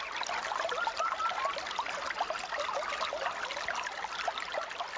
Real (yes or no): yes